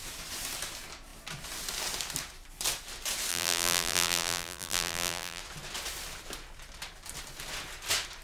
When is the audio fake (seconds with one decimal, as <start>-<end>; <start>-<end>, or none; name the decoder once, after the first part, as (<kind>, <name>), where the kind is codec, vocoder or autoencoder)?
3.3-5.4 (vocoder, BigVGAN v2)

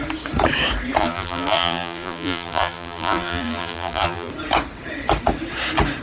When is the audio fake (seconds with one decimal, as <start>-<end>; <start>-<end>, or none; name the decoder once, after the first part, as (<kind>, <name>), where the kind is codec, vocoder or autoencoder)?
1.0-4.3 (vocoder, BigVGAN v2)

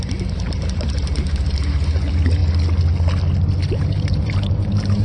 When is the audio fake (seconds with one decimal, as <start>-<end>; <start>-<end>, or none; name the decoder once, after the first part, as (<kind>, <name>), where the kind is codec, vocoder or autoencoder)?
0.0-2.4 (vocoder, BigVGAN v2); 3.7-5.0

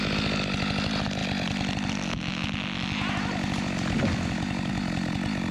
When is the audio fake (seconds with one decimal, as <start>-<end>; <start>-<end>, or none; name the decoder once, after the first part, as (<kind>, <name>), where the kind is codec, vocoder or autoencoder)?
1.2-1.9 (vocoder, BigVGAN v2)

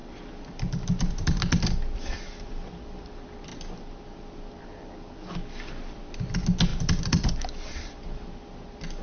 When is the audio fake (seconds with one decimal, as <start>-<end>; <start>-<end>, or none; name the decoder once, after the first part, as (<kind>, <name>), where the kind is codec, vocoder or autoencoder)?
0.0-3.1 (vocoder, BigVGAN v2); 3.5-6.0; 6.7-7.3

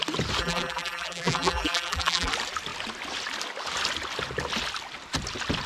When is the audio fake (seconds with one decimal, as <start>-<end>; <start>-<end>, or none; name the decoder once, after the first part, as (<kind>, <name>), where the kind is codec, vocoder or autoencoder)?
0.4-2.3 (vocoder, BigVGAN v2)

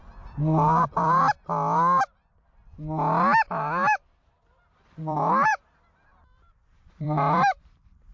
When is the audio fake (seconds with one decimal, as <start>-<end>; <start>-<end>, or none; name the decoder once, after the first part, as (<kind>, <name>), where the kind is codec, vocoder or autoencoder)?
4.7-8.1 (vocoder, BigVGAN v2)